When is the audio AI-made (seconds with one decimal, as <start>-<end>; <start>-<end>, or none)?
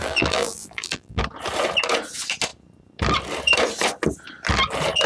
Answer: 0.0-1.2